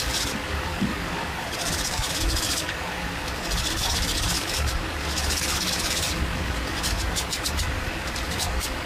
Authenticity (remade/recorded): remade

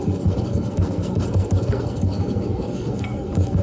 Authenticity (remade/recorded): remade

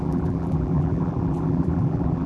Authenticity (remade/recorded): remade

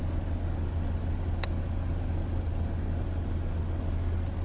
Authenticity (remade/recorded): recorded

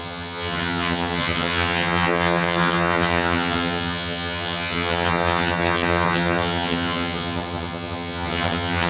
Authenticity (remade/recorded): remade